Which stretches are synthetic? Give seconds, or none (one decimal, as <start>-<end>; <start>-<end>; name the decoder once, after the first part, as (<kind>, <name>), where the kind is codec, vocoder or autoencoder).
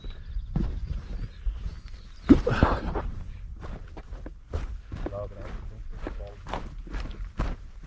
none